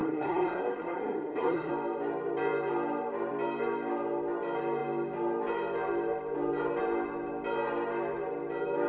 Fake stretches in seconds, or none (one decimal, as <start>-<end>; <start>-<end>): 0.0-1.7